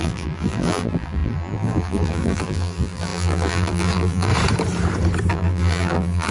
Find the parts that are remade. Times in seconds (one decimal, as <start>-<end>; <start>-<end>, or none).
0.0-4.3; 5.3-6.3